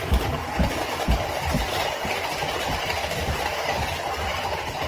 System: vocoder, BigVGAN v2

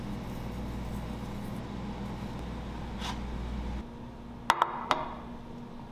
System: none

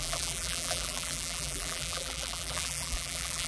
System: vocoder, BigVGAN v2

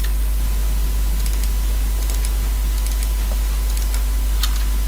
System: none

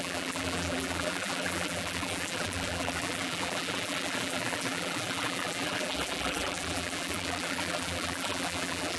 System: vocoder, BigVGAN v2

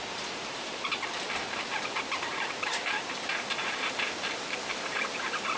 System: vocoder, BigVGAN v2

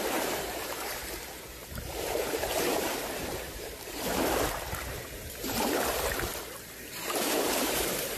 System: vocoder, BigVGAN v2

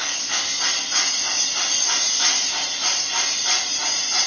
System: none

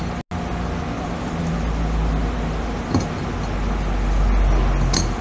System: none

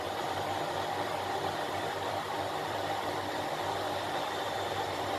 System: vocoder, BigVGAN v2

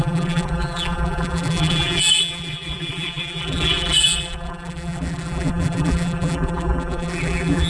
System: vocoder, BigVGAN v2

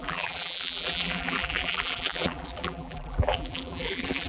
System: vocoder, BigVGAN v2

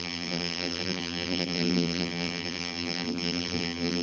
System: vocoder, BigVGAN v2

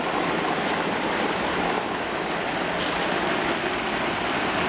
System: none